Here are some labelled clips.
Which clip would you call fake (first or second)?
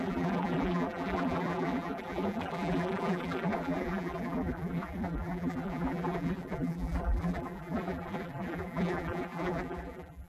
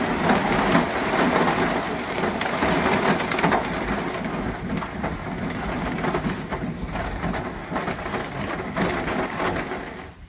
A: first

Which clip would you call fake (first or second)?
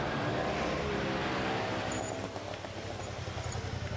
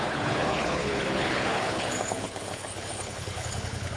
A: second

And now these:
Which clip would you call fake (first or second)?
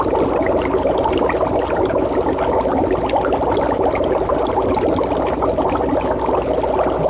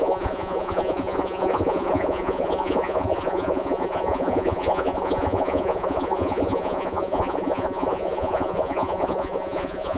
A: second